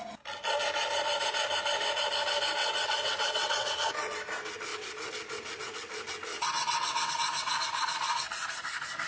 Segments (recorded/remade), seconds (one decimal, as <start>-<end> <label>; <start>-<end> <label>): 0.0-2.6 recorded; 2.6-3.7 remade; 3.7-6.3 recorded; 6.3-7.1 remade; 7.1-9.1 recorded